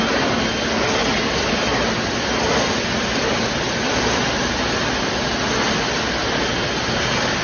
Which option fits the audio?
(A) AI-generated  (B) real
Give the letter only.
B